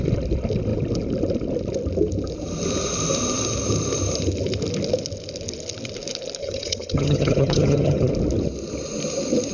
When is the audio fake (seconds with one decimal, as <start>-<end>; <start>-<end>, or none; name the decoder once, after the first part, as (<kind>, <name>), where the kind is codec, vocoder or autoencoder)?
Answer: 6.4-8.1 (vocoder, HiFi-GAN)